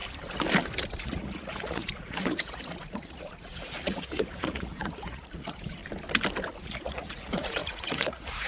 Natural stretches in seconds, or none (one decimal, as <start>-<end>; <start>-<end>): 0.0-1.0; 5.8-6.6